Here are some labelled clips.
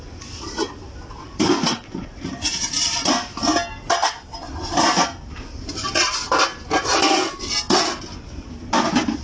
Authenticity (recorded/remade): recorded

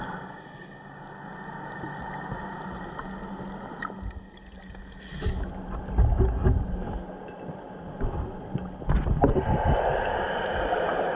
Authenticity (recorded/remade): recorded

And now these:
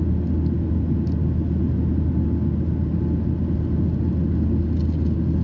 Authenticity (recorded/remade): recorded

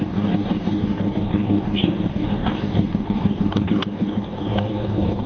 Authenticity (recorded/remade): remade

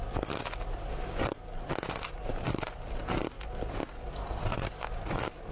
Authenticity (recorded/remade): recorded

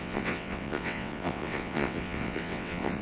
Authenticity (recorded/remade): remade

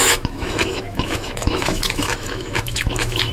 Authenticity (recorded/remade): remade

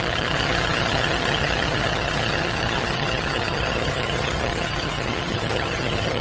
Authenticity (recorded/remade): remade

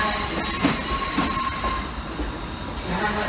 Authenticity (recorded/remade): recorded